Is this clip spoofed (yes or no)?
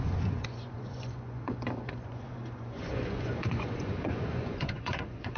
yes